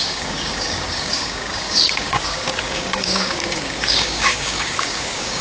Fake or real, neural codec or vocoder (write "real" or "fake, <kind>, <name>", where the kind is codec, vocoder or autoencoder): fake, codec, DAC